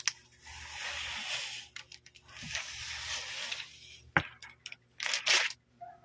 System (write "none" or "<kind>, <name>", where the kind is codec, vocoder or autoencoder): none